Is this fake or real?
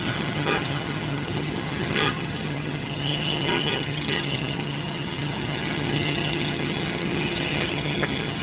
fake